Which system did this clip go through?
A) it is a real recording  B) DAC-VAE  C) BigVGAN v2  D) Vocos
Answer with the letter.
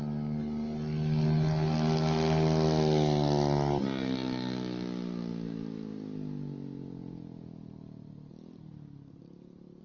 A